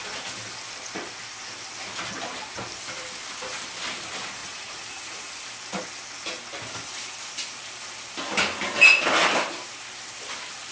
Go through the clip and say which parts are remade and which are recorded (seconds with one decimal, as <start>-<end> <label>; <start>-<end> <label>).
0.0-4.4 recorded; 4.4-5.3 remade; 5.3-10.7 recorded